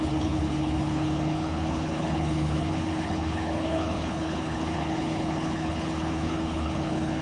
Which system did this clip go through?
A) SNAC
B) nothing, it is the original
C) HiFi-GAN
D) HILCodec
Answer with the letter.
D